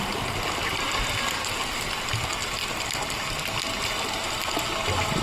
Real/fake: real